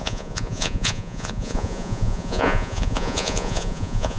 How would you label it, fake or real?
fake